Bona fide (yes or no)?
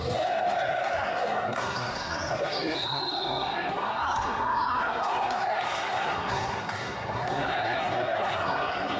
no